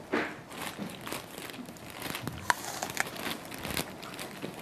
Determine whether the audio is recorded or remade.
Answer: recorded